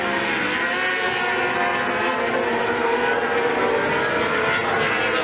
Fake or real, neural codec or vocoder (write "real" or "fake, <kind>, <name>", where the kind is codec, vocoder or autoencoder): real